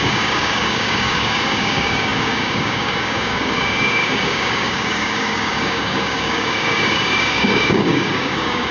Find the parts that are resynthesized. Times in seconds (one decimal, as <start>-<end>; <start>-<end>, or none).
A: 0.0-8.7